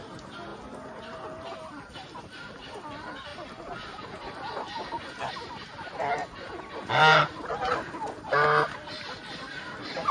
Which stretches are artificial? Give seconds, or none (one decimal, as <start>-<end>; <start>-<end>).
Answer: none